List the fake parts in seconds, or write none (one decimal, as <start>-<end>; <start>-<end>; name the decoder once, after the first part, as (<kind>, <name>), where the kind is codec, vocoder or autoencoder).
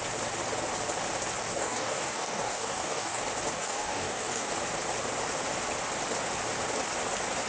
1.4-3.2 (codec, DAC); 3.6-4.5